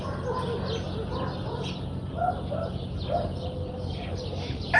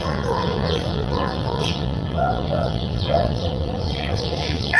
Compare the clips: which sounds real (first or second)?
first